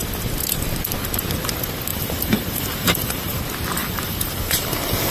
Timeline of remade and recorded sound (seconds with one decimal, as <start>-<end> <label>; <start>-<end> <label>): 0.0-1.9 recorded; 1.9-3.4 remade; 3.4-3.8 recorded; 3.8-5.1 remade